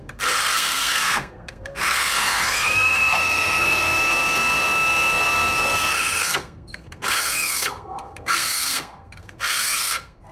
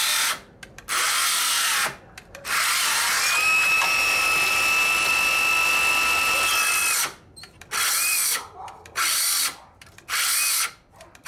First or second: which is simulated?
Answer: first